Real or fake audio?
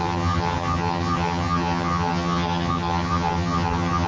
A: fake